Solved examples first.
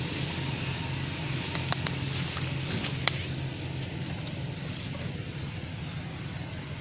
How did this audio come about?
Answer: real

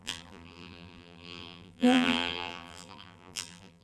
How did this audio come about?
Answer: fake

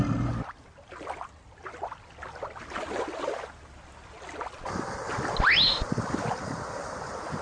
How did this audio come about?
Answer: real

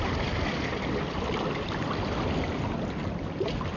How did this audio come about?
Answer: real